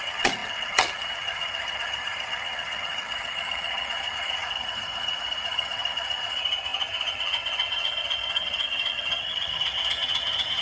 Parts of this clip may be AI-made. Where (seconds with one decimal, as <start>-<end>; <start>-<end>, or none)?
0.0-10.6